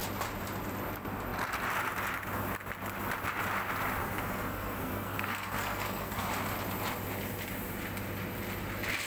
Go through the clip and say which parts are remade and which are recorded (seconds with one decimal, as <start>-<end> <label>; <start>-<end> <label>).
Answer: 0.0-4.0 recorded; 4.0-6.3 remade; 6.3-9.1 recorded